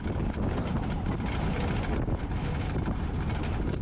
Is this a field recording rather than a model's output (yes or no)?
yes